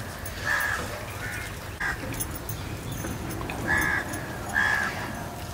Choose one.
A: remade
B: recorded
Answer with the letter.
B